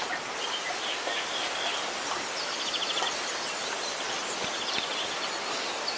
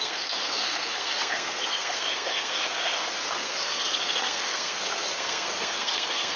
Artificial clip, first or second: second